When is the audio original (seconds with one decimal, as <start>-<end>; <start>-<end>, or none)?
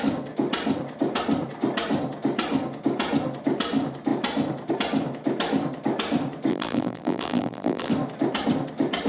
0.0-6.5; 7.9-9.1